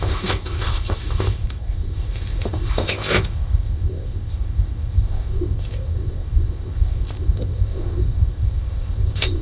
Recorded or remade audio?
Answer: remade